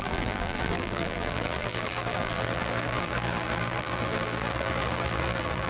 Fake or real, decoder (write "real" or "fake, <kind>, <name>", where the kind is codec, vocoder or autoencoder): fake, vocoder, BigVGAN v2